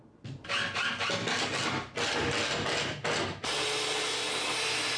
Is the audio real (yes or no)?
yes